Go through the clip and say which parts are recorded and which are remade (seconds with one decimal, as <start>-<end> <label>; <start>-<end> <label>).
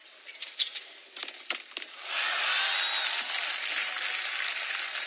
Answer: 0.0-2.1 remade; 2.1-5.1 recorded